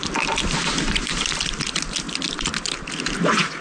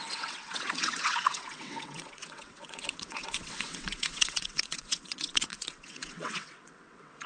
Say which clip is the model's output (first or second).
second